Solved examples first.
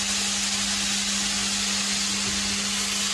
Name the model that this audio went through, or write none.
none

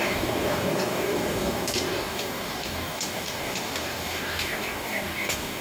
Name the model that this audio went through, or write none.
codec, DAC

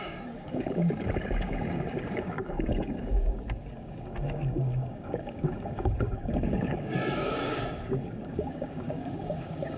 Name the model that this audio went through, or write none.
codec, DAC